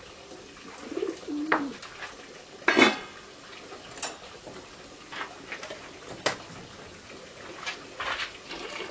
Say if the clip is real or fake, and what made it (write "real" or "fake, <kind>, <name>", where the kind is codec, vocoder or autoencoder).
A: real